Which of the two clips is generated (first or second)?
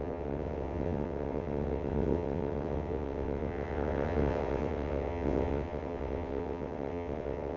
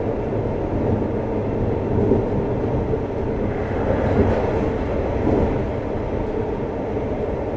first